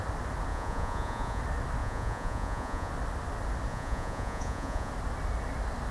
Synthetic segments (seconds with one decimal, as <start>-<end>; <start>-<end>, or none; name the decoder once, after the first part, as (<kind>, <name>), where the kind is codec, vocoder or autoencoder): 0.5-1.4 (vocoder, Vocos); 1.8-2.9; 3.7-4.9